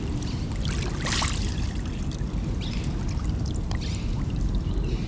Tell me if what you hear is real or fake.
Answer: real